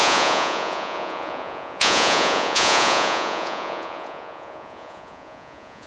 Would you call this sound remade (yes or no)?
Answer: yes